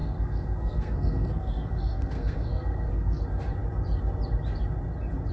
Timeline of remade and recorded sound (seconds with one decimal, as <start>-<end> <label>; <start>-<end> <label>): 0.0-3.2 remade; 3.2-5.3 recorded